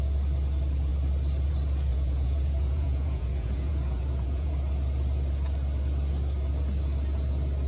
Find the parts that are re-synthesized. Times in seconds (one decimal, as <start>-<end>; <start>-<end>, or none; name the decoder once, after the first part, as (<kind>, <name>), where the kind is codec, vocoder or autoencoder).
1.9-4.5 (vocoder, Vocos)